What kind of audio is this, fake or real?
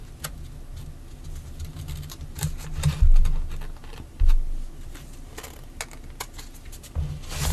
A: real